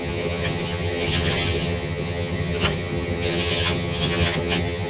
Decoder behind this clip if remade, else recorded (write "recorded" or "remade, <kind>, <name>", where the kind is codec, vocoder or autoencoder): remade, vocoder, HiFi-GAN